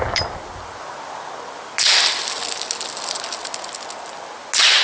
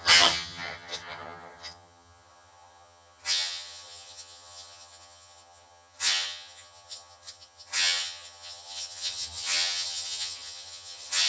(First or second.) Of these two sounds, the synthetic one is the second